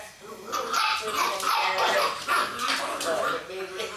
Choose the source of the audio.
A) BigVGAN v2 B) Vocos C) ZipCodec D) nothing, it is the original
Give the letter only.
D